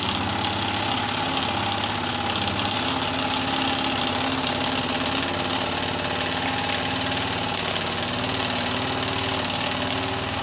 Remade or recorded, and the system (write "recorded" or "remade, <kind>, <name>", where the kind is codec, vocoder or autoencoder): recorded